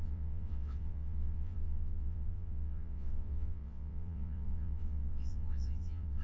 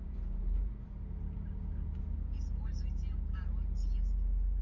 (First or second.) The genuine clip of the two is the second